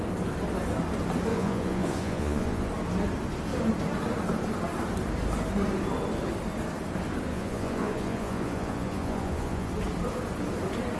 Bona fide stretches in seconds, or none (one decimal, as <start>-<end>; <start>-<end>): 0.0-1.3; 2.7-7.3; 9.7-11.0

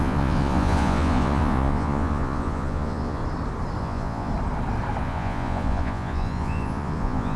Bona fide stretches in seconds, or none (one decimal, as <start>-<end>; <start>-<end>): 3.2-3.8; 4.3-5.0

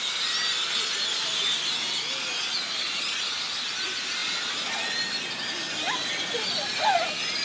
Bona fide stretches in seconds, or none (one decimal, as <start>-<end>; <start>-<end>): 0.0-7.4

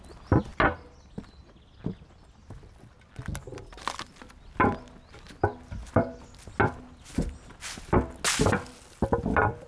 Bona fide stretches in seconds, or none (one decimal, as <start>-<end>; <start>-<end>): 0.0-9.7